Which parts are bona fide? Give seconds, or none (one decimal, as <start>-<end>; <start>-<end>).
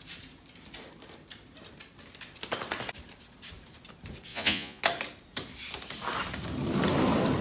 0.0-4.3; 4.8-7.4